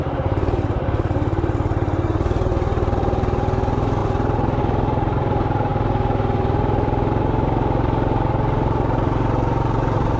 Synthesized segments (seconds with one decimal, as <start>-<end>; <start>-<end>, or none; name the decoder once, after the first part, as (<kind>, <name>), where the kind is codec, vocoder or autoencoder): 0.0-4.0 (vocoder, BigVGAN v2); 4.6-5.7; 7.2-10.2